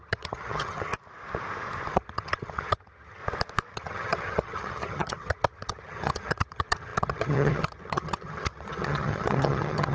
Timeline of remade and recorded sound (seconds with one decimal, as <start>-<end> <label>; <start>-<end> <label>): 0.0-0.9 remade; 0.9-1.9 recorded; 1.9-3.2 remade; 3.2-3.7 recorded; 3.7-9.9 remade